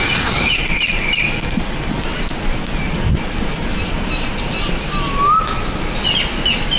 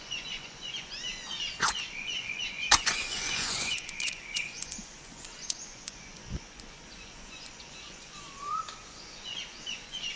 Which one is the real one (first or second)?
first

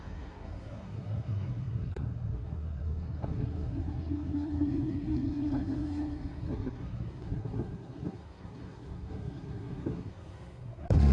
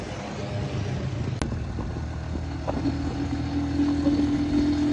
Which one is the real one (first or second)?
second